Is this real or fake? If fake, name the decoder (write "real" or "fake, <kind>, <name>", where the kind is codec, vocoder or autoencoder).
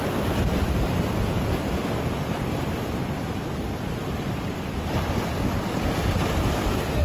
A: real